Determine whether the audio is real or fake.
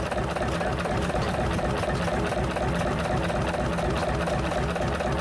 real